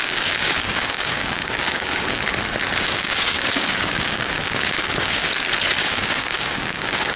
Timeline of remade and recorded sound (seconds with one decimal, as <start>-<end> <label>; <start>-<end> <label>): 0.0-2.2 remade; 2.2-2.9 recorded; 2.9-5.2 remade; 5.2-5.8 recorded; 5.8-7.2 remade